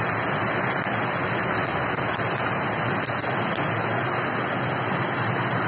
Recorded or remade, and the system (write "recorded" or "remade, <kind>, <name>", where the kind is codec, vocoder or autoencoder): recorded